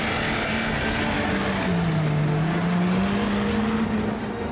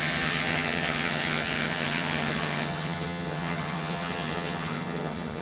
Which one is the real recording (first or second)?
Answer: first